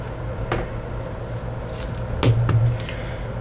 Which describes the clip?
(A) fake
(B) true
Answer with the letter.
B